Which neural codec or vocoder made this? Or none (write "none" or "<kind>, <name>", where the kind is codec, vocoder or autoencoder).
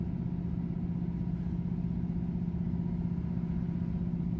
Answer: none